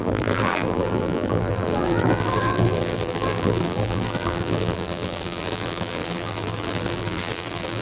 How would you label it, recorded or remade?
remade